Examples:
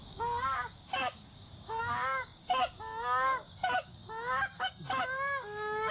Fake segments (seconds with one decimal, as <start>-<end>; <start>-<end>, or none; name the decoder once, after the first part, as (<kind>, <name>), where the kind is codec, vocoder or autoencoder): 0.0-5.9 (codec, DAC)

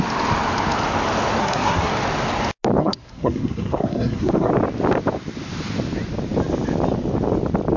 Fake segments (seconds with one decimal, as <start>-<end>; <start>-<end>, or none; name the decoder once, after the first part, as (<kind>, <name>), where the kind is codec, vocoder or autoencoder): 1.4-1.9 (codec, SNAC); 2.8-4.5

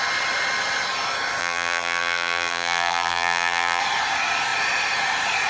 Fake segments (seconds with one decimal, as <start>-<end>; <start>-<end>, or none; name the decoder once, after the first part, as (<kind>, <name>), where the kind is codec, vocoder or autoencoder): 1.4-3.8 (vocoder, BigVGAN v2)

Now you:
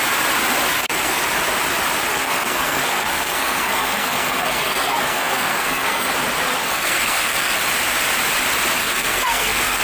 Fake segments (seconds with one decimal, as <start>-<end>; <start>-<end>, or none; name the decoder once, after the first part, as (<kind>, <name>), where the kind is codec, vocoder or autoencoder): 0.7-1.2 (codec, SNAC); 2.1-6.1; 6.6-7.6; 8.8-9.8